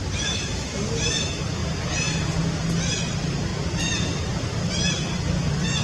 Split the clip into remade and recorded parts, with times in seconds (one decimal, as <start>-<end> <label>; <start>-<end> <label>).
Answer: 0.0-5.8 recorded